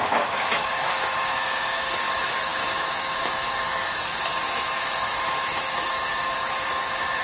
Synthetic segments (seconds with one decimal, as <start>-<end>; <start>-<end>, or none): 0.0-7.2